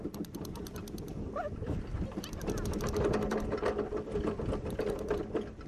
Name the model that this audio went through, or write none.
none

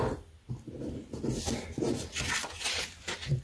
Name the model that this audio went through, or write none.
none